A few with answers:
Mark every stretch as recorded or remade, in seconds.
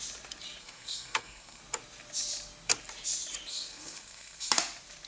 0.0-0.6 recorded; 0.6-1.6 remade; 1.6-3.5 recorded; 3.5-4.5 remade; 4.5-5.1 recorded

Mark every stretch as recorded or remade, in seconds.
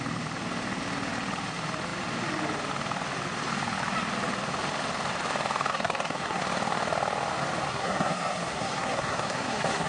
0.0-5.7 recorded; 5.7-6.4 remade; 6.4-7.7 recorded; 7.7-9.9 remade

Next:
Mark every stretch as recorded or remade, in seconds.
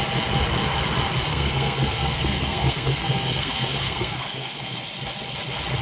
0.0-1.3 recorded; 1.3-4.8 remade; 4.8-5.8 recorded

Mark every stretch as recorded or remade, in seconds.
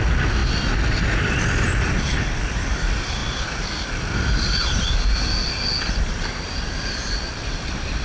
0.0-8.0 recorded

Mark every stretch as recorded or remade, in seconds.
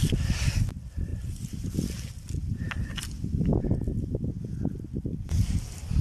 0.0-6.0 recorded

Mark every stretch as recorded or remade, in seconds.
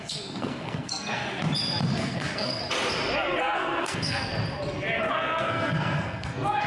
0.0-1.2 remade; 1.2-1.9 recorded; 1.9-2.6 remade; 2.6-3.4 recorded; 3.4-4.3 remade; 4.3-5.1 recorded; 5.1-6.7 remade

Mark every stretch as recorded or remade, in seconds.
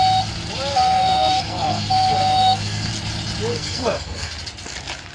0.0-0.7 recorded; 0.7-2.9 remade; 2.9-3.5 recorded; 3.5-4.3 remade; 4.3-5.1 recorded